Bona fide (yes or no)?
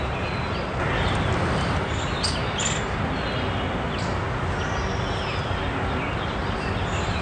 yes